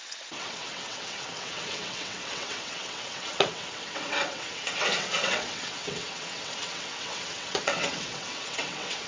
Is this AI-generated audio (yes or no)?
yes